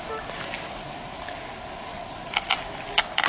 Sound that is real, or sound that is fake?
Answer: real